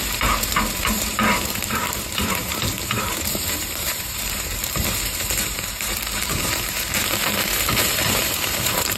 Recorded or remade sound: remade